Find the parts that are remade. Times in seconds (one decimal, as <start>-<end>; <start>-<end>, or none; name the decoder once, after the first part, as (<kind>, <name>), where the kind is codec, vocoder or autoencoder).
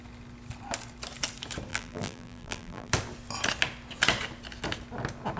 1.7-2.9 (vocoder, BigVGAN v2)